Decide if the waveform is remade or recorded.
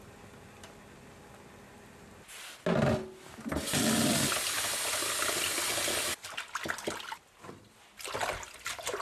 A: recorded